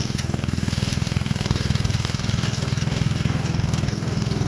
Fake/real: fake